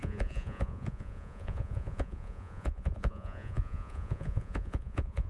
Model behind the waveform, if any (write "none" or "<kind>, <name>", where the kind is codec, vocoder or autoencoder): vocoder, Vocos